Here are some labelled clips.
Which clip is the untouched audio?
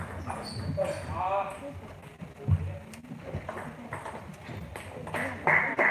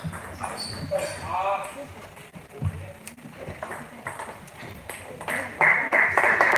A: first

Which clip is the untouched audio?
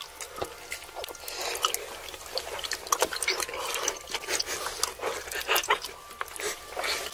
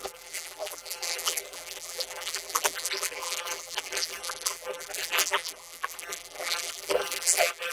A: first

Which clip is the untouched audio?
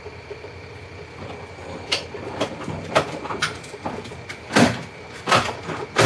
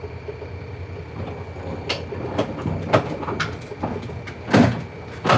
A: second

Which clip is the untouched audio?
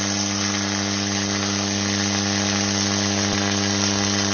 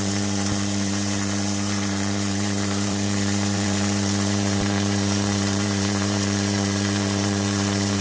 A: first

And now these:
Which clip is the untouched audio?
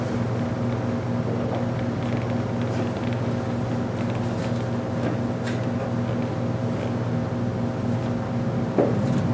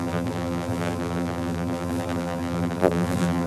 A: first